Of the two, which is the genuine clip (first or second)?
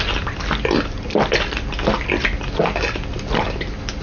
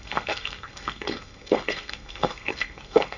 first